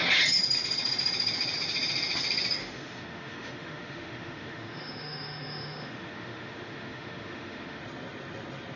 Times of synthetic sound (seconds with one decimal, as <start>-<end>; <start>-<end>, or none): 2.6-7.8